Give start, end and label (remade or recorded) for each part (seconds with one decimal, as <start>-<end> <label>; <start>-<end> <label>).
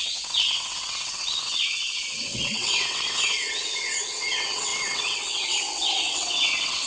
0.0-6.9 remade